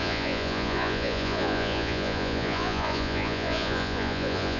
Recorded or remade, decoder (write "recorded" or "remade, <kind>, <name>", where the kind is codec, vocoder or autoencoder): remade, vocoder, Vocos